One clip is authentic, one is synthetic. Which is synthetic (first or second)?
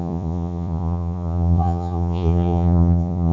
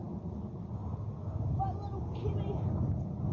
first